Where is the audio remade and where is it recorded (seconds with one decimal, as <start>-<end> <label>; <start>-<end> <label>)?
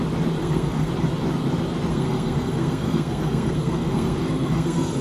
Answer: 0.0-0.4 recorded; 0.4-0.9 remade; 0.9-1.9 recorded; 1.9-5.0 remade